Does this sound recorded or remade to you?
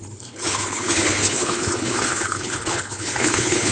remade